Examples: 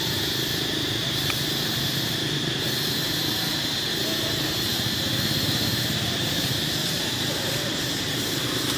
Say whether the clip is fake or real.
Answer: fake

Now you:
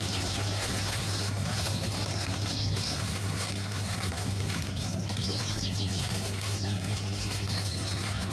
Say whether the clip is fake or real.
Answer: fake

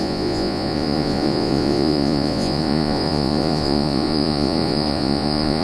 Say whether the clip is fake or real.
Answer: fake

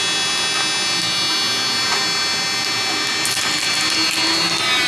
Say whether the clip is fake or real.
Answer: real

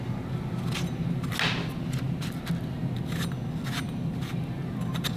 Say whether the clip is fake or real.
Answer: real